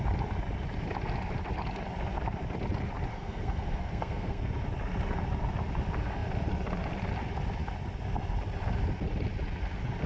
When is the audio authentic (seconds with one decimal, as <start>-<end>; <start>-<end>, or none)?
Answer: 0.0-3.1; 4.5-10.1